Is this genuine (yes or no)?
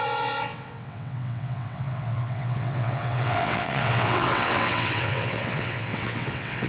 no